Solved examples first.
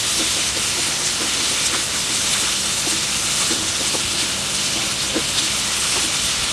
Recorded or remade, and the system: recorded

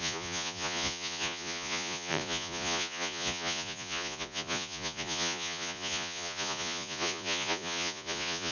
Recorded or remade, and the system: remade, vocoder, Vocos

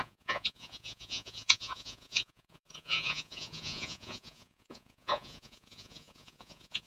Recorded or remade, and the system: remade, vocoder, Vocos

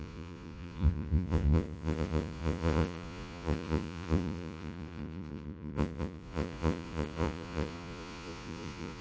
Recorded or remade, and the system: remade, vocoder, Vocos